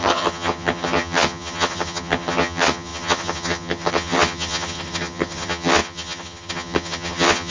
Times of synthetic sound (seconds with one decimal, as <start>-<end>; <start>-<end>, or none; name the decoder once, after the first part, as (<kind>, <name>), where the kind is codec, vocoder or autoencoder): 0.0-7.5 (vocoder, HiFi-GAN)